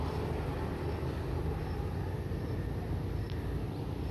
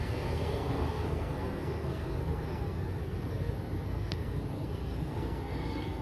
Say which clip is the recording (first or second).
first